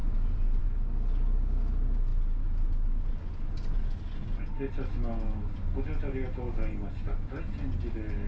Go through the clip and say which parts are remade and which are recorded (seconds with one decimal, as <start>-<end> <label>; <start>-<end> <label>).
0.0-0.6 remade; 0.6-8.3 recorded